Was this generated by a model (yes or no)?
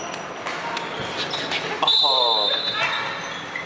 no